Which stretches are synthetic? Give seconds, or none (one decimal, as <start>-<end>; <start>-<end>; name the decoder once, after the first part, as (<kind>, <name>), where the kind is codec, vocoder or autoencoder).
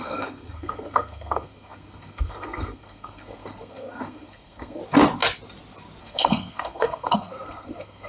0.0-4.8 (codec, SNAC); 6.0-8.1